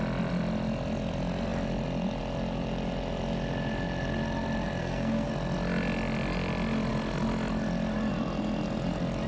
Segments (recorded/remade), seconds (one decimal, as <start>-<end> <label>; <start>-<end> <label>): 0.0-4.8 recorded; 4.8-5.3 remade; 5.3-9.3 recorded